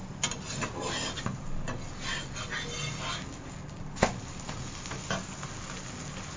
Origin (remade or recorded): recorded